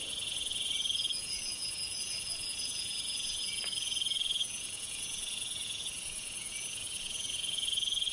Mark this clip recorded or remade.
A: remade